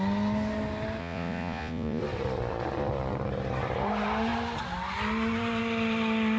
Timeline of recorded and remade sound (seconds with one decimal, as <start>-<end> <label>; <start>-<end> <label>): 0.0-1.0 recorded; 1.0-2.0 remade; 2.0-6.4 recorded